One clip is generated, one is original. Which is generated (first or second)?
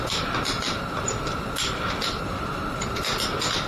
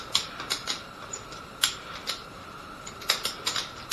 second